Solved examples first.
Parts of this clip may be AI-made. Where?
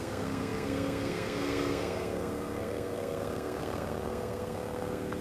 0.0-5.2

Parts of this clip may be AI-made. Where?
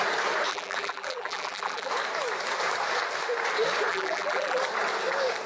0.5-1.9; 3.9-4.6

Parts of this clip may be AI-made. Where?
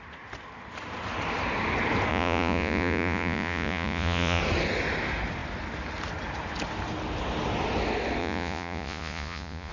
2.1-4.4; 8.2-9.7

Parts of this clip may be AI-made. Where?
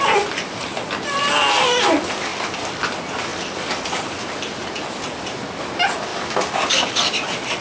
2.3-2.8; 3.3-4.4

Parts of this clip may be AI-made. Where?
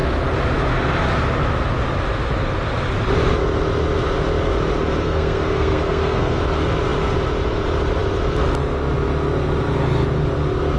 5.0-6.4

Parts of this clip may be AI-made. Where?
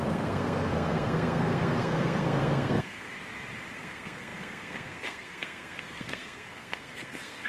0.0-3.1; 3.7-7.5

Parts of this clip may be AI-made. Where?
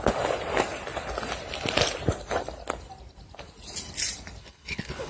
4.4-5.1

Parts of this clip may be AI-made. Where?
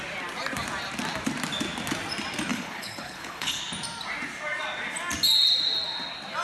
2.5-3.6